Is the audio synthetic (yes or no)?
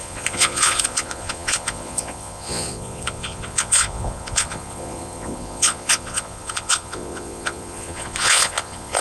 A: yes